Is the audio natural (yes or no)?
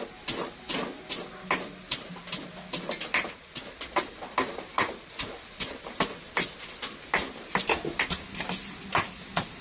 yes